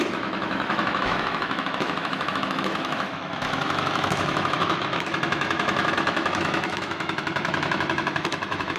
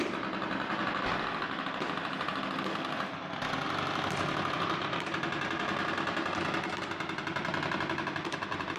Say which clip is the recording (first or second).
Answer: second